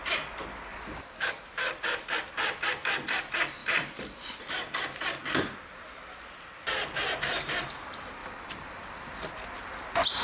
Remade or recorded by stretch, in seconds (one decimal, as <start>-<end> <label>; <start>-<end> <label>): 0.0-0.7 recorded; 0.7-1.7 remade; 1.7-3.6 recorded; 3.6-4.4 remade; 4.4-8.2 recorded; 8.2-9.3 remade; 9.3-10.2 recorded